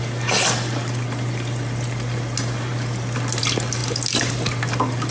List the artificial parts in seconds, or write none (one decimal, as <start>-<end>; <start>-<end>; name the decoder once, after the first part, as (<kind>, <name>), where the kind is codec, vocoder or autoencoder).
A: none